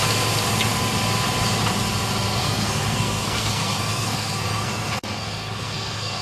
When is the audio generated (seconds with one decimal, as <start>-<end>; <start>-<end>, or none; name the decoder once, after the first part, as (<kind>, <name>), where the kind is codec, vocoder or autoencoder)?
2.4-6.2 (codec, SNAC)